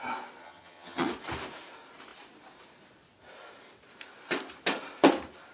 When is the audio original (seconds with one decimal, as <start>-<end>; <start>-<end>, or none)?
0.0-0.4; 1.1-5.5